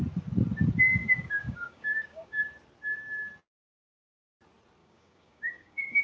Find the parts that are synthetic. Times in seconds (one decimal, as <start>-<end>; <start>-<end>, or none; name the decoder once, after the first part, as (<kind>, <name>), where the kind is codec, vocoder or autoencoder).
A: 1.0-2.4 (codec, DAC); 4.8-6.0